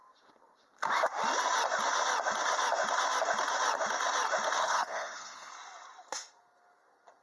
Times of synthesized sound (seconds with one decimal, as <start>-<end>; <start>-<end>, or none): 4.6-5.5